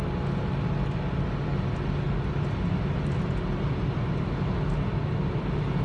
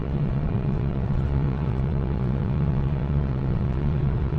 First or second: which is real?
first